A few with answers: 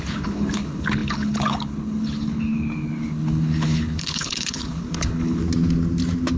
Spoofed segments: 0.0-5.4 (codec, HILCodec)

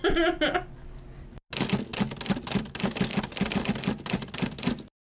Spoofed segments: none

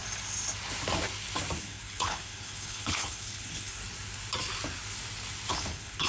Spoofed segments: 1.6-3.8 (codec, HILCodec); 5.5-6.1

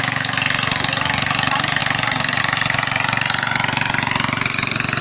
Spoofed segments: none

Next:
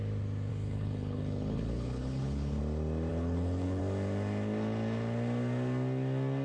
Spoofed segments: 0.5-2.6 (codec, HILCodec); 3.1-3.8

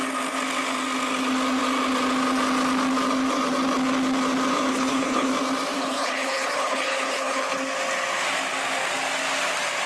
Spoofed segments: 4.7-5.3 (codec, HILCodec); 5.8-7.6